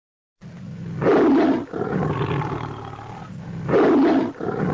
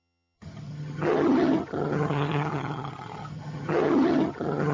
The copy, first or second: second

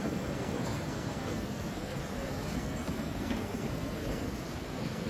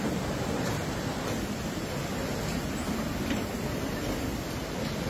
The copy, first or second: first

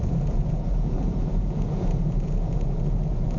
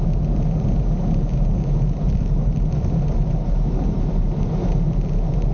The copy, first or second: first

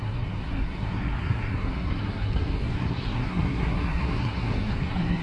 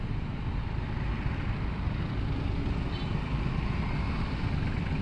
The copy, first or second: first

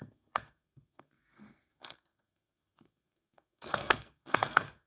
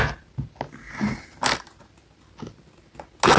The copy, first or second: first